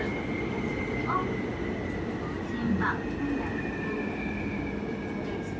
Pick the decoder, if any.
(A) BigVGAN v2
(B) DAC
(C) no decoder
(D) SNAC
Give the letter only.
C